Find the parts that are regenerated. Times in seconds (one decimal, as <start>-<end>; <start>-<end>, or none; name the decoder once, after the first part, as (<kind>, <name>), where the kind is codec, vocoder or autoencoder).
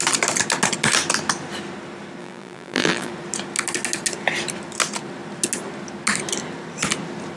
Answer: 2.2-3.1 (vocoder, BigVGAN v2)